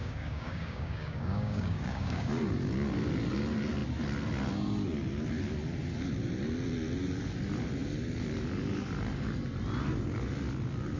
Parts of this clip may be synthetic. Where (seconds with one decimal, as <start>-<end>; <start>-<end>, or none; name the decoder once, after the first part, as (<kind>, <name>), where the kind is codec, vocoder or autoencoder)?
0.0-2.3 (codec, DAC)